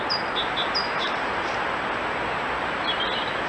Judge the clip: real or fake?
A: real